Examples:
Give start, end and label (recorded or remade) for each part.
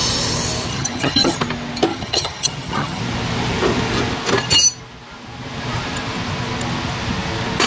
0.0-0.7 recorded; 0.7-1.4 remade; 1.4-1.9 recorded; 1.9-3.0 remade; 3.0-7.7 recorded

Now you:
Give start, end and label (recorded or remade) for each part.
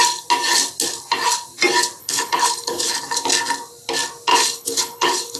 0.0-2.0 recorded; 2.0-3.0 remade; 3.0-4.3 recorded; 4.3-5.4 remade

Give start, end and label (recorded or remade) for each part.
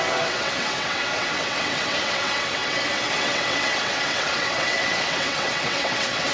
0.0-6.3 remade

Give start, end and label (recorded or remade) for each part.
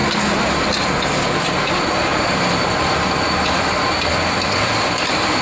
0.0-1.0 remade; 1.0-2.1 recorded; 2.1-5.4 remade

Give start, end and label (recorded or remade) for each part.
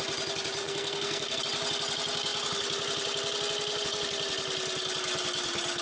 0.0-0.6 recorded; 0.6-1.4 remade; 1.4-5.8 recorded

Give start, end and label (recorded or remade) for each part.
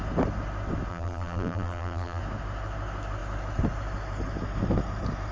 0.0-0.9 recorded; 0.9-2.2 remade; 2.2-5.3 recorded